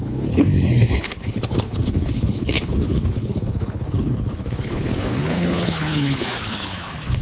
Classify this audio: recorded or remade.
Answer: remade